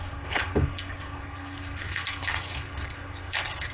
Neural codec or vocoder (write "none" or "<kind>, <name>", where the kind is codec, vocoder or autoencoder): codec, SNAC